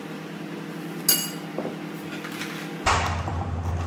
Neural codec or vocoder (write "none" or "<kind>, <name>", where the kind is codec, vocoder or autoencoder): none